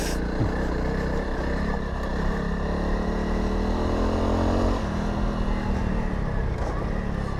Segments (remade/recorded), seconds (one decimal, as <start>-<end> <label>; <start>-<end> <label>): 0.0-7.4 recorded